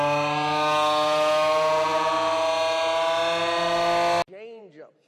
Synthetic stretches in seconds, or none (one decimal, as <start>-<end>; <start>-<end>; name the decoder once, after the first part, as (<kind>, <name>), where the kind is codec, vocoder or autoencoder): none